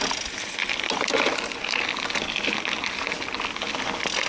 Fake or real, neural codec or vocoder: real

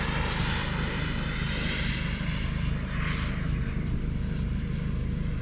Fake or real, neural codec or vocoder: real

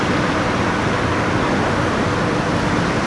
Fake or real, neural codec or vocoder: real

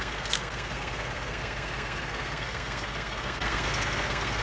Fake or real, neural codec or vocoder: fake, codec, SNAC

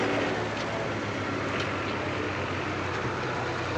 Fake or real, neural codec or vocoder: real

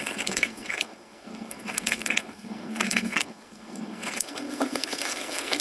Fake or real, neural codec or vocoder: fake, codec, SNAC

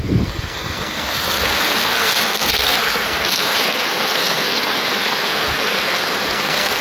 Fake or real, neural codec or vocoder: fake, codec, SNAC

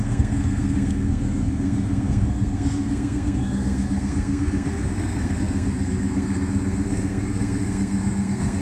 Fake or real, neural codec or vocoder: fake, codec, SNAC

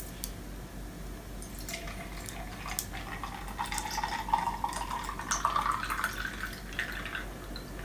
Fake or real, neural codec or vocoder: real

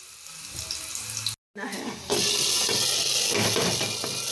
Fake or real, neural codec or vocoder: real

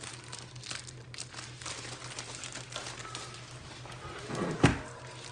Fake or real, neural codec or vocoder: real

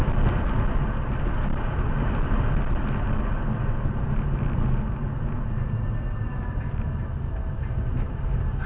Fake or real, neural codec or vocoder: real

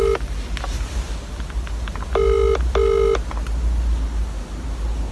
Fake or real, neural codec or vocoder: real